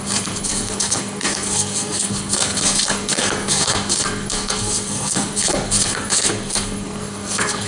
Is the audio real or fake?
fake